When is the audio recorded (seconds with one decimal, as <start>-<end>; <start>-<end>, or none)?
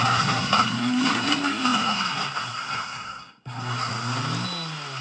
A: 3.9-5.0